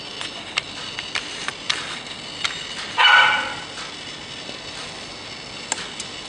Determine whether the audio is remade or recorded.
recorded